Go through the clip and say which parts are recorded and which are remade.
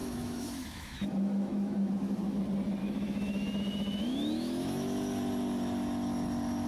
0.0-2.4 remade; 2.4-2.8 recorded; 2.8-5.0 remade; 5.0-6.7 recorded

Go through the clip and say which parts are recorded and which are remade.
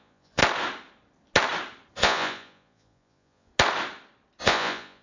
0.0-0.4 remade; 0.4-2.0 recorded; 2.0-3.5 remade; 3.5-4.4 recorded; 4.4-5.0 remade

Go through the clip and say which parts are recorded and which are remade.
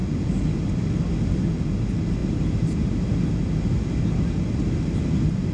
0.0-5.5 recorded